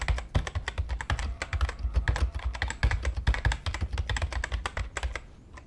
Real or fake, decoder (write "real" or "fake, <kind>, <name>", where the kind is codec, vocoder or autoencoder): real